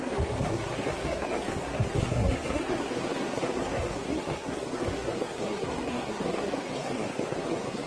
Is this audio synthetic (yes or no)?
yes